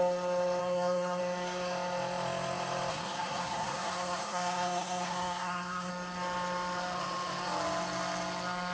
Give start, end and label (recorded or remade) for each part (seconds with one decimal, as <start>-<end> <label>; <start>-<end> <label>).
0.0-0.6 recorded; 0.6-1.2 remade; 1.2-2.9 recorded; 2.9-5.9 remade; 5.9-8.7 recorded